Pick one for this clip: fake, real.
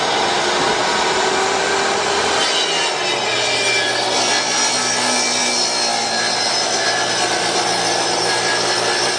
real